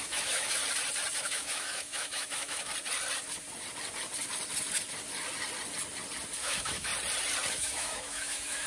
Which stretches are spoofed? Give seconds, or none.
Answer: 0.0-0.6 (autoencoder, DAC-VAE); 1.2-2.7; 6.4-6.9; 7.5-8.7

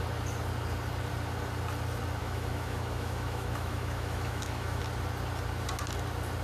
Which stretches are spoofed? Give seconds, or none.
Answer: 2.2-4.8 (autoencoder, DAC-VAE)

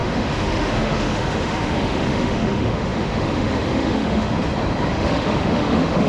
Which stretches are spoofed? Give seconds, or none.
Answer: 0.0-4.3 (autoencoder, DAC-VAE); 4.9-6.1

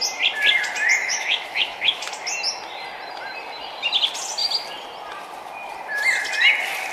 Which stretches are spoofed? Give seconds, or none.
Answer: 1.0-2.1 (autoencoder, DAC-VAE)

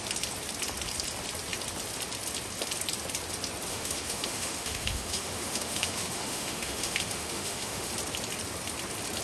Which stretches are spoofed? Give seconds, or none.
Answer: 3.7-7.9 (autoencoder, DAC-VAE)

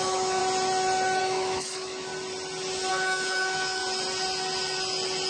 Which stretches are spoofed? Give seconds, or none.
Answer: 0.0-0.4 (autoencoder, DAC-VAE); 1.2-2.1; 2.9-3.8